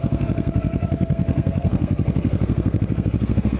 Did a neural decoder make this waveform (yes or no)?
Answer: yes